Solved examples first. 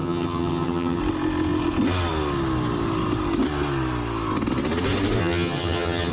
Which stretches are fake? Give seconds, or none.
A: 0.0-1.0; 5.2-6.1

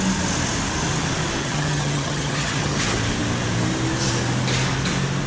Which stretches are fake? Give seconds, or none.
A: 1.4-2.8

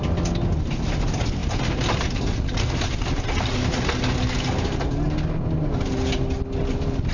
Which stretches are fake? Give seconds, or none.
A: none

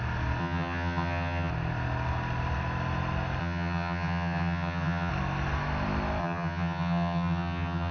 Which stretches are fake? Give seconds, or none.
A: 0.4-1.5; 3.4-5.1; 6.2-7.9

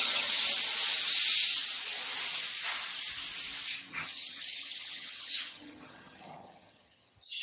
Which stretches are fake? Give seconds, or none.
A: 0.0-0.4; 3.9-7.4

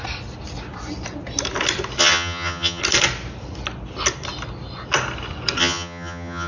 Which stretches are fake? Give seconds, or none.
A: 2.0-2.8; 5.6-6.5

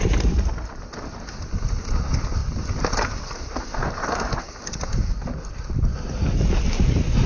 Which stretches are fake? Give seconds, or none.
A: none